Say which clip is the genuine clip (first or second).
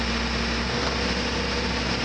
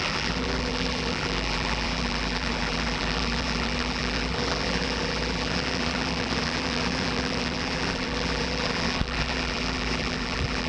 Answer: first